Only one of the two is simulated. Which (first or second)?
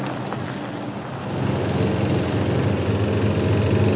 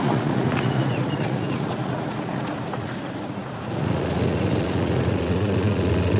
second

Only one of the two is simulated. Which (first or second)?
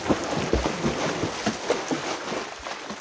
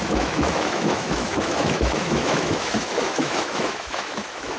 second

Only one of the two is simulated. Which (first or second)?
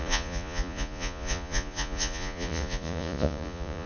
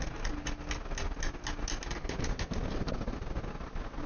first